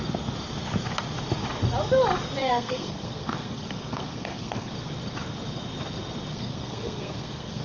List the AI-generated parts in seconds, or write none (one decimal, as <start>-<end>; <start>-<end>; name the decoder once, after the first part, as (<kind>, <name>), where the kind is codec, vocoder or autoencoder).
2.4-4.7 (codec, SNAC); 6.3-7.6